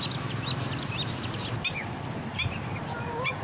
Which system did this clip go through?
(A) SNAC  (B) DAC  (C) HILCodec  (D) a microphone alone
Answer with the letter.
D